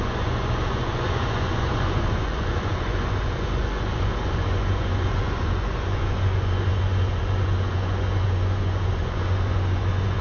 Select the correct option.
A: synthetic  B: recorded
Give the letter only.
A